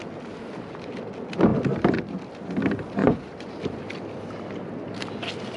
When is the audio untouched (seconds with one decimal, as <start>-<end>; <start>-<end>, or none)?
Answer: 0.0-3.0; 3.5-5.6